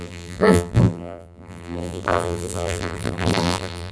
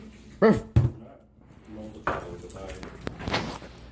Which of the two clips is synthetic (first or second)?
first